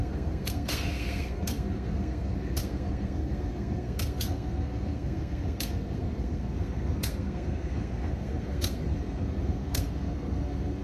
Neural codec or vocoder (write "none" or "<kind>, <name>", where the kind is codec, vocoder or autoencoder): codec, SNAC